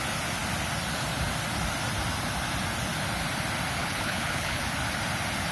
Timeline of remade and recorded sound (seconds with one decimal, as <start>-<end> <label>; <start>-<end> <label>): 0.0-3.8 recorded; 3.8-4.6 remade; 4.6-5.5 recorded